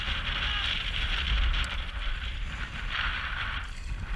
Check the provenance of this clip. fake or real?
fake